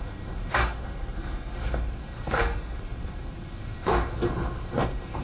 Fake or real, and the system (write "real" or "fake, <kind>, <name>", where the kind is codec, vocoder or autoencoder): fake, codec, SNAC